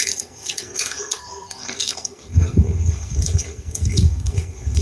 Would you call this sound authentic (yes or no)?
no